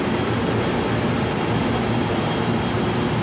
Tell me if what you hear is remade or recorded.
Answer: recorded